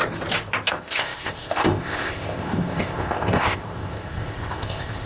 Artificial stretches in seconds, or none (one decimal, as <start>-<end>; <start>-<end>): 0.7-5.1